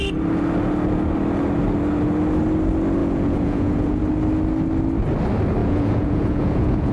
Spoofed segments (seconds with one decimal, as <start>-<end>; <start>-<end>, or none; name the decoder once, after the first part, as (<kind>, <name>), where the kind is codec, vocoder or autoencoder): 3.0-4.0 (vocoder, Vocos); 5.6-6.9